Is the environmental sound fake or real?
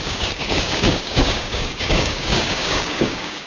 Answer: fake